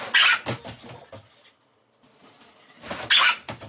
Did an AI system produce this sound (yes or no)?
no